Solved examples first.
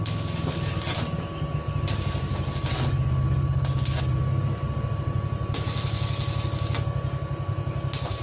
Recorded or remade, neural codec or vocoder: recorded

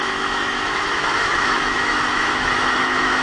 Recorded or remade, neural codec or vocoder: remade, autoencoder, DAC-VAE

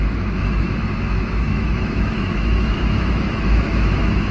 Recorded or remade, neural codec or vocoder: remade, autoencoder, DAC-VAE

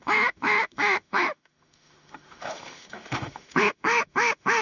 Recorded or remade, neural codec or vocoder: remade, autoencoder, DAC-VAE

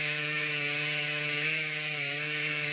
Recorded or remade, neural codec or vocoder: remade, autoencoder, DAC-VAE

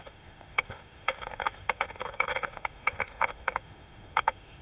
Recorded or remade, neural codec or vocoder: remade, autoencoder, DAC-VAE